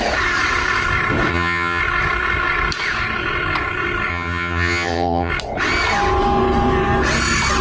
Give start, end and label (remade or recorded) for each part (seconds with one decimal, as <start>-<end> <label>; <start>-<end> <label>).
0.0-1.3 recorded; 1.3-1.8 remade; 1.8-4.1 recorded; 4.1-5.3 remade; 5.3-7.6 recorded